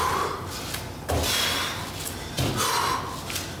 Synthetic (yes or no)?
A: no